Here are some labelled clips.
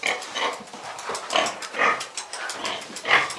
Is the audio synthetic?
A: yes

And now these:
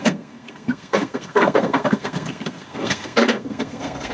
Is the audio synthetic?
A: yes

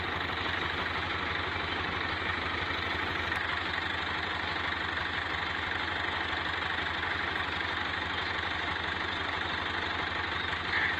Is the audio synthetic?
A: no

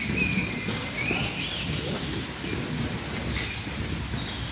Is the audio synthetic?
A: no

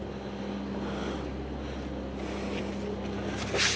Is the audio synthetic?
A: no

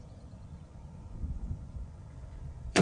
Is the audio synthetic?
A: yes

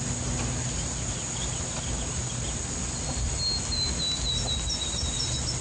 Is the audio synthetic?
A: no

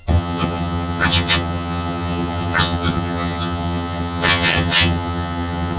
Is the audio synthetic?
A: yes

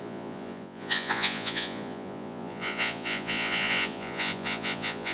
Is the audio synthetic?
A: yes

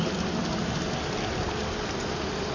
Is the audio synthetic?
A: no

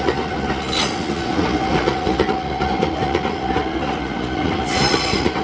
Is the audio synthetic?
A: yes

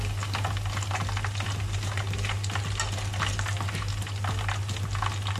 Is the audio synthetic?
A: no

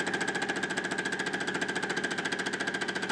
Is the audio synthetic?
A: no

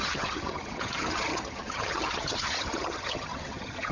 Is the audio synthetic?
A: yes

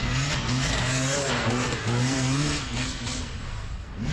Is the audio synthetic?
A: yes